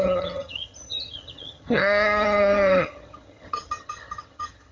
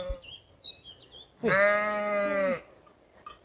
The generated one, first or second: first